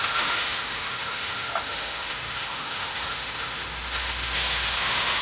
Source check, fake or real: fake